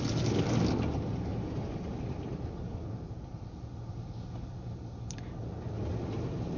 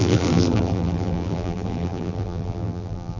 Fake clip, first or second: second